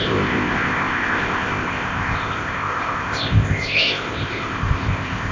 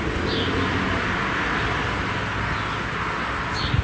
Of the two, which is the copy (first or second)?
first